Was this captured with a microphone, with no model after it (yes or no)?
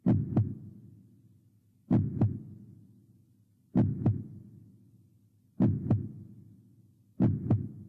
yes